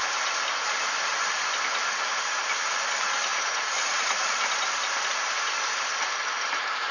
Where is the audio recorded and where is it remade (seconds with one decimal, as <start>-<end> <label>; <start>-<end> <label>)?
0.0-3.3 recorded; 3.3-4.2 remade; 4.2-6.9 recorded